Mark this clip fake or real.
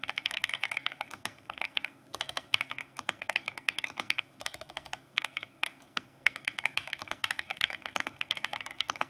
fake